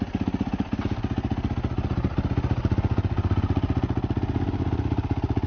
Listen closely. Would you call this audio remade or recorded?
recorded